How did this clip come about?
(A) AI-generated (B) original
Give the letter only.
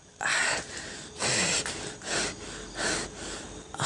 B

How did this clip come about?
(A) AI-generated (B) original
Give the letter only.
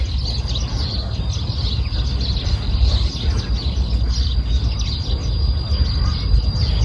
B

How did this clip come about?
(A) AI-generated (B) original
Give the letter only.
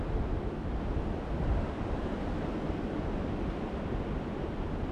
B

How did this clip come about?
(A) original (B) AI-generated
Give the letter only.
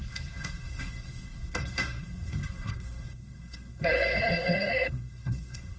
B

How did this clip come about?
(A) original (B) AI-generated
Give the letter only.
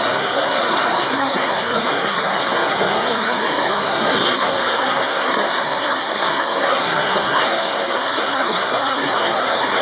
B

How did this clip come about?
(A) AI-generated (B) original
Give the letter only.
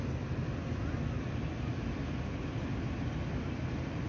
B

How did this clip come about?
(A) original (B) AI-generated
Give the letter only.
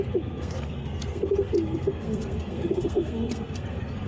B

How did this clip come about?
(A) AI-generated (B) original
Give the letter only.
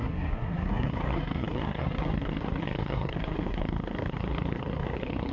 A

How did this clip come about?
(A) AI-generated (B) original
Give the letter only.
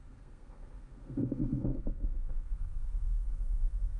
A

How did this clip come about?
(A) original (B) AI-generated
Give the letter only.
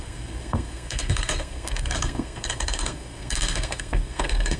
B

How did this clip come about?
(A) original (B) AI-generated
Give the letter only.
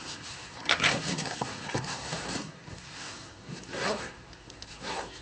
B